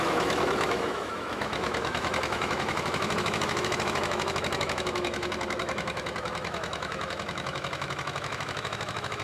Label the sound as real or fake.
fake